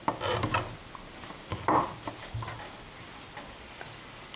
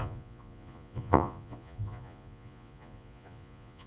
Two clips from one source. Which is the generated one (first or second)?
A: second